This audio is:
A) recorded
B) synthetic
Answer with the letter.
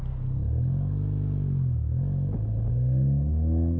A